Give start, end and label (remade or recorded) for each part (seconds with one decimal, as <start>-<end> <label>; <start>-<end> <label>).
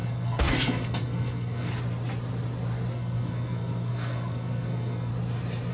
0.0-1.7 remade; 1.7-2.9 recorded; 2.9-5.1 remade; 5.1-5.7 recorded